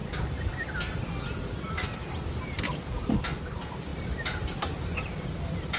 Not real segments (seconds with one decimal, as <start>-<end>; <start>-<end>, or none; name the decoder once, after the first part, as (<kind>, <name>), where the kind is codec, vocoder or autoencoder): none